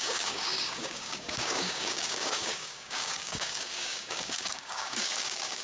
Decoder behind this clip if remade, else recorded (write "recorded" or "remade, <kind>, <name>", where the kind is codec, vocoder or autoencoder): remade, codec, DAC